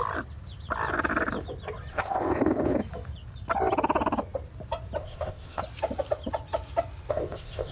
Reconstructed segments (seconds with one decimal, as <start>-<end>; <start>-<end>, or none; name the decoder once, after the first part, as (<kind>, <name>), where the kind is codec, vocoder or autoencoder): 1.9-2.8 (codec, ZipCodec); 5.0-5.6; 7.1-7.7